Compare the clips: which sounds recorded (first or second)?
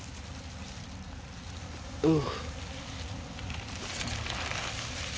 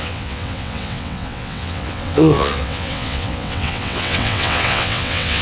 first